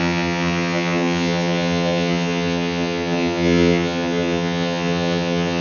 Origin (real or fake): fake